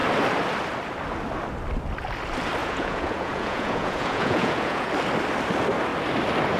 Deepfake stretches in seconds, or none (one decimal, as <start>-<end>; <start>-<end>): 2.6-4.9